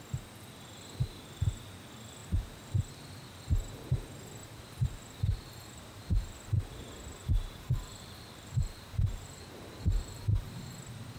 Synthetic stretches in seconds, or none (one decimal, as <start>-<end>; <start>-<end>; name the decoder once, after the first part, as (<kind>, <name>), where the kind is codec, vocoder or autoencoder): 2.2-2.8 (vocoder, BigVGAN v2); 4.4-6.6; 7.2-10.6